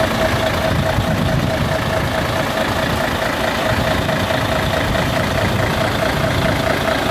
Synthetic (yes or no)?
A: no